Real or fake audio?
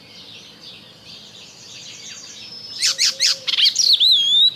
fake